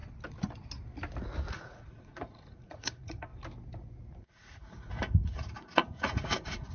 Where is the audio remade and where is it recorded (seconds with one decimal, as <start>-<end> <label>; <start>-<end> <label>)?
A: 0.0-1.5 recorded; 1.5-3.3 remade; 3.3-4.2 recorded; 4.2-6.7 remade